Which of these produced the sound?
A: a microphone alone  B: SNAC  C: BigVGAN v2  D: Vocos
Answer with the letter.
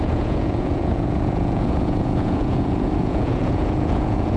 D